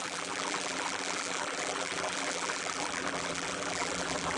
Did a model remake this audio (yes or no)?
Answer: yes